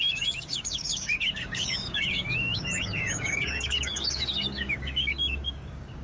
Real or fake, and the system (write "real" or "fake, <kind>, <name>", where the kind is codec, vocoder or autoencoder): fake, codec, DAC